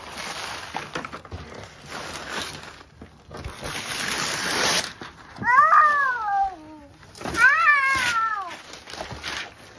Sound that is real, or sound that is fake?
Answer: real